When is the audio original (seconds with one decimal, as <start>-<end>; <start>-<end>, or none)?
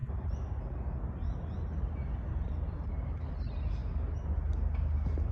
0.0-5.3